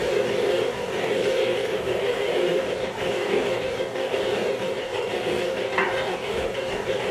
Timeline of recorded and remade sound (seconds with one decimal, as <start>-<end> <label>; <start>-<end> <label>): 0.0-7.1 remade